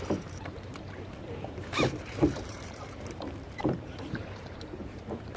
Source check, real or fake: fake